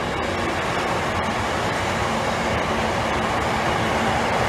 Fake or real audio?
real